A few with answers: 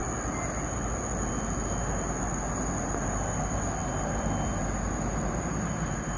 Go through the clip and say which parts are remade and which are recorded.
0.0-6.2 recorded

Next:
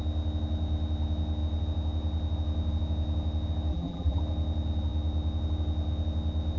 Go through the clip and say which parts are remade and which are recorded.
0.0-3.7 recorded; 3.7-4.2 remade; 4.2-6.6 recorded